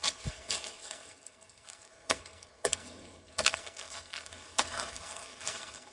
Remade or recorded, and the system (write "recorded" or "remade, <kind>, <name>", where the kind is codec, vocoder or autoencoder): remade, codec, SNAC